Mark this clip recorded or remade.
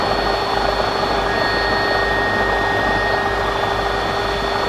recorded